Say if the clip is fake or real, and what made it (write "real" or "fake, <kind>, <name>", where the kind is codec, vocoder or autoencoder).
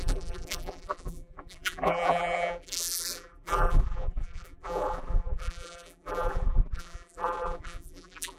fake, vocoder, BigVGAN v2